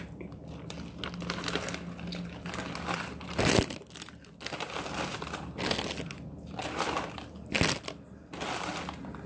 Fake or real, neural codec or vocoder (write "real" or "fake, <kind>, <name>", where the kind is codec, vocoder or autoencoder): real